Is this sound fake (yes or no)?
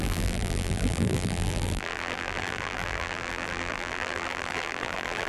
yes